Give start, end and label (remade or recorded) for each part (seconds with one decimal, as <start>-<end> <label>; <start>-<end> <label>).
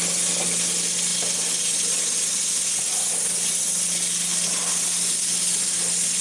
0.0-6.2 recorded